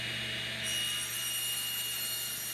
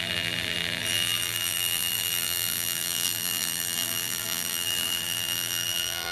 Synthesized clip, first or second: second